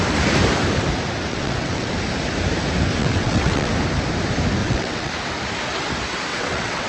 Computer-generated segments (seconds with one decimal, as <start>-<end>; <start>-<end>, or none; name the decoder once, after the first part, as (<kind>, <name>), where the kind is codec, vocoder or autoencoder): 1.3-1.9 (vocoder, WaveNeXt); 3.0-3.7; 4.6-5.1; 6.3-6.9